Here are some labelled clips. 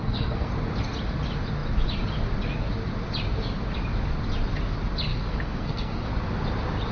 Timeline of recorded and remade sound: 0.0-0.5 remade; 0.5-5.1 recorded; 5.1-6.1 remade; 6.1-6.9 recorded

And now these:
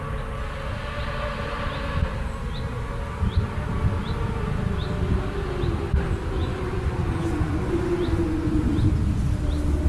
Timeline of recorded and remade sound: 0.0-6.4 recorded; 6.4-8.9 remade; 8.9-9.9 recorded

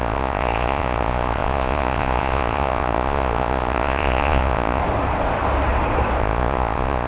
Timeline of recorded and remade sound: 0.0-4.8 remade; 4.8-6.2 recorded; 6.2-7.1 remade

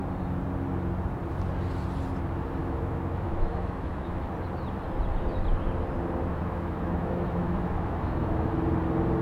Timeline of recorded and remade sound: 0.0-2.6 recorded; 2.6-4.3 remade; 4.3-6.3 recorded; 6.3-8.5 remade; 8.5-9.2 recorded

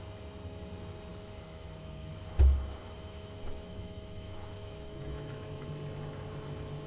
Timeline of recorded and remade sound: 0.0-1.1 recorded; 1.1-2.1 remade; 2.1-2.8 recorded; 2.8-5.7 remade; 5.7-6.9 recorded

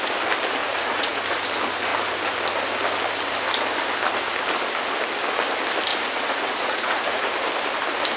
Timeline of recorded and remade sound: 0.0-0.6 recorded; 0.6-1.2 remade; 1.2-5.9 recorded; 5.9-7.3 remade; 7.3-8.2 recorded

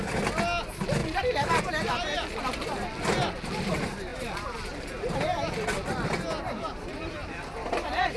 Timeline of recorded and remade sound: 0.0-1.0 recorded; 1.0-1.6 remade; 1.6-8.2 recorded

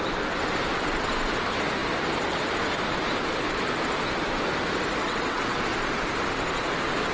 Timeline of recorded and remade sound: 0.0-5.0 recorded; 5.0-5.6 remade; 5.6-7.1 recorded